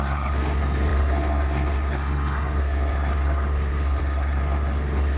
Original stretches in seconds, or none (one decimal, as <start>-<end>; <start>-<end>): none